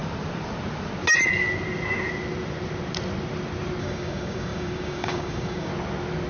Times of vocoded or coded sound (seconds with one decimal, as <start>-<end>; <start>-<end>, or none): 3.8-5.7